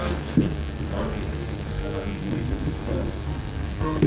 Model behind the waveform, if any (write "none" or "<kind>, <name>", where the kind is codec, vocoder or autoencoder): codec, SNAC